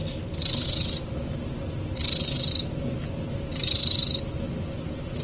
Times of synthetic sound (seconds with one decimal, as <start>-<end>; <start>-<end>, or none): none